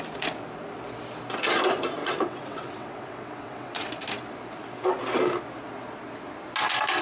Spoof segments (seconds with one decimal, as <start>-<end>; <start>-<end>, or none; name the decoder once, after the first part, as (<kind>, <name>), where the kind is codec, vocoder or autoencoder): 2.0-3.9 (vocoder, WaveNeXt)